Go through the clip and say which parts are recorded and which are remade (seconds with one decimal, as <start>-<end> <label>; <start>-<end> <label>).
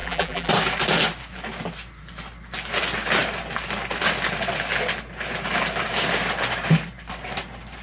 0.0-0.5 remade; 0.5-7.8 recorded